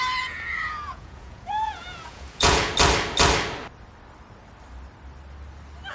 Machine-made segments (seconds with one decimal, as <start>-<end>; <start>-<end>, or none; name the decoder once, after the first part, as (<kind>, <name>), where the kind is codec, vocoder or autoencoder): 0.0-2.7 (vocoder, Vocos)